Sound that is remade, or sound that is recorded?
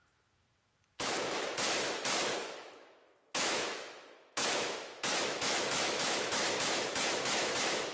remade